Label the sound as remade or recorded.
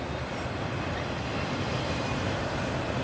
recorded